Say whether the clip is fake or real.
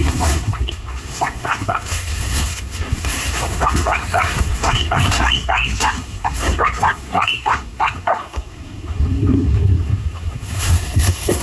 fake